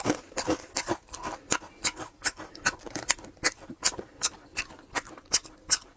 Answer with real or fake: real